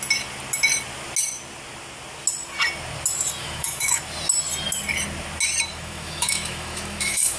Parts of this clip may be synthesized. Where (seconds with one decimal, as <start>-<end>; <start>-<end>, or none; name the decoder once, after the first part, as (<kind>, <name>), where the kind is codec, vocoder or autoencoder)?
3.4-4.0 (autoencoder, DAC-VAE); 5.7-7.4